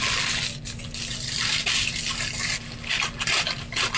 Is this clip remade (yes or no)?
no